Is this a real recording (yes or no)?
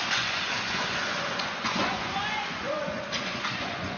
no